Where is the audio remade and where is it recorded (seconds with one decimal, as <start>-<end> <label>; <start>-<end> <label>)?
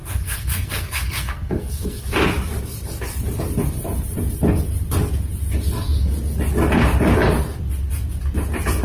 0.0-2.0 remade; 2.0-8.8 recorded